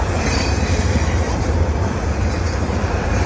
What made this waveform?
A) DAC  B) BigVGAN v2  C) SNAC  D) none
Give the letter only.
B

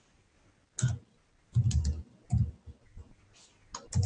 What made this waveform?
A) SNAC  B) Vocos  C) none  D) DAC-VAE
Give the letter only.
C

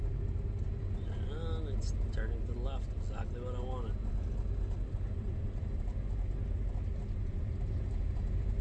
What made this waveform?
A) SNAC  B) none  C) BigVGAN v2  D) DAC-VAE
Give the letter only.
B